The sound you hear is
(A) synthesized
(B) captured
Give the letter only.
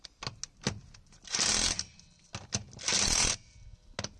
B